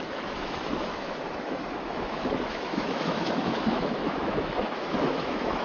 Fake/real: fake